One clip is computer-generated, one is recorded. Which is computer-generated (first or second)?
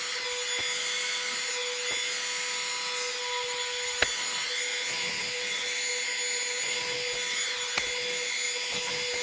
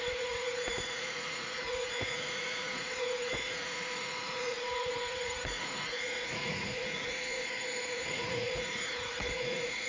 second